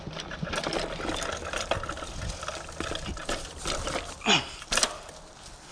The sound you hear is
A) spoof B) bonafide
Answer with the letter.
B